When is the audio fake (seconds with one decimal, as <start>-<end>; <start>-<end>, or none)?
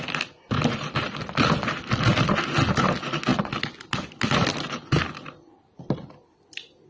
none